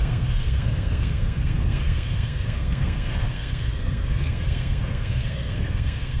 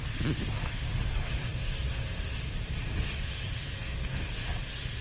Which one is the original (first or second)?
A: second